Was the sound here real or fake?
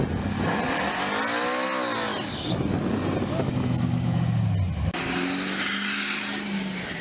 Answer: real